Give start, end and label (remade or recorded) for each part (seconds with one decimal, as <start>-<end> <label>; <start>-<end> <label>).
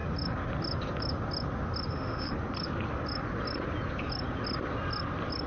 0.0-1.9 recorded; 1.9-2.3 remade; 2.3-5.5 recorded